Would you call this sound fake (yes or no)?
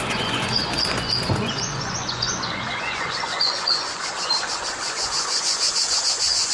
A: yes